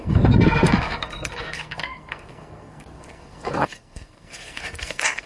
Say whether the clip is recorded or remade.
remade